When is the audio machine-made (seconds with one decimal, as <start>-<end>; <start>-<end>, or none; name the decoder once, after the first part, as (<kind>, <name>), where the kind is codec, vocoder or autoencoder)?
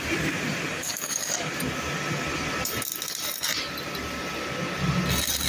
0.7-1.5 (codec, DAC)